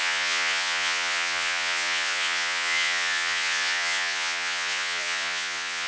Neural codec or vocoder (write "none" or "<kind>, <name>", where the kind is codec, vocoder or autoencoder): vocoder, Vocos